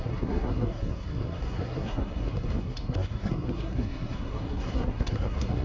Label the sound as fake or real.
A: fake